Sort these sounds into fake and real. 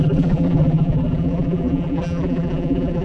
fake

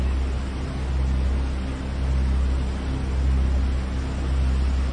real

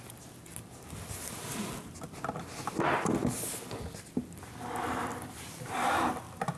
real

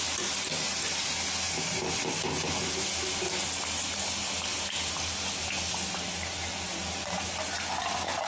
real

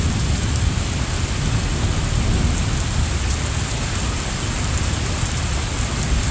real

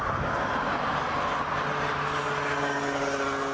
real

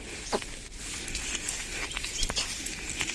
real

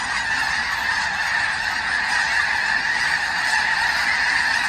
real